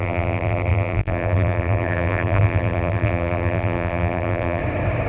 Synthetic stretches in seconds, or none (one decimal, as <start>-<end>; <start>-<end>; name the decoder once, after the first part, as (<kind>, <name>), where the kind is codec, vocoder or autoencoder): 0.0-4.6 (vocoder, BigVGAN v2)